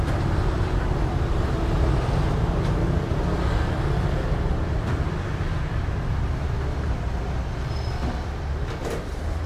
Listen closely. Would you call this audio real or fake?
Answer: real